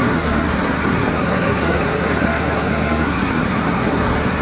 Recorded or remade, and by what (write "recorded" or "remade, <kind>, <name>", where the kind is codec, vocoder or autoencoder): remade, codec, SNAC